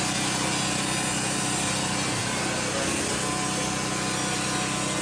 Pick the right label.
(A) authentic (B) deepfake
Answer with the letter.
A